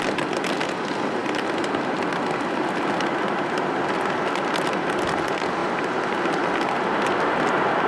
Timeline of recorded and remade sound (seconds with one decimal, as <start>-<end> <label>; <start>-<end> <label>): 0.0-7.9 recorded